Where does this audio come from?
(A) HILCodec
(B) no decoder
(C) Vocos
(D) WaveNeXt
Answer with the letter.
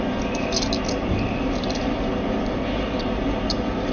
B